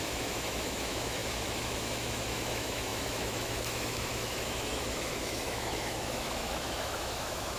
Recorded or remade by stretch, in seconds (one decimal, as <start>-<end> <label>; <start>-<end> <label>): 0.0-7.6 remade